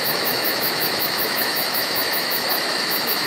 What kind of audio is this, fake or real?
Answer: fake